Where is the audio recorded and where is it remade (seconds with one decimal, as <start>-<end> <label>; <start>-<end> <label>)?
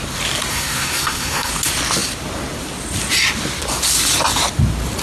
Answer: 0.0-0.5 recorded; 0.5-1.5 remade; 1.5-5.0 recorded